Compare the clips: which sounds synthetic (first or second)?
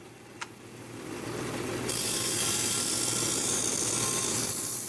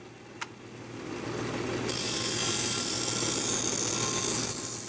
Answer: first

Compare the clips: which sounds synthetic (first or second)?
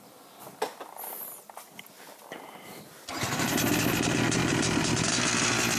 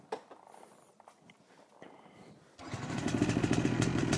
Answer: second